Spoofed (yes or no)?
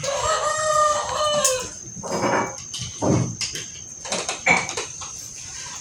no